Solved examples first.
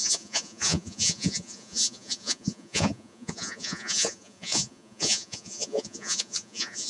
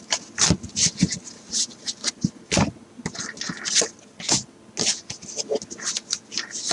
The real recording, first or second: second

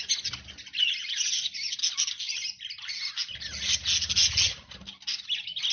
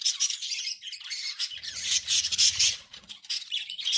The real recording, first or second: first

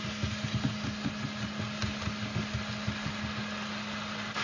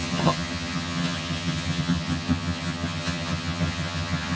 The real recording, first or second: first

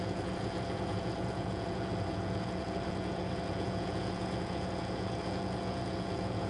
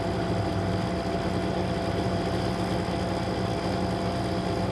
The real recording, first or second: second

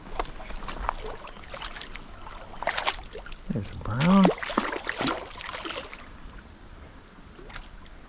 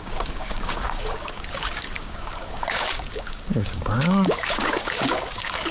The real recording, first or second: first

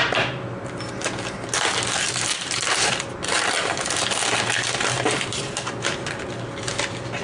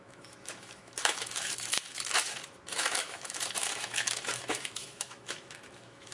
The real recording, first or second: first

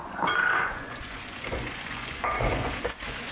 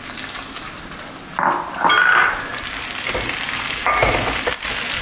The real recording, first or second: second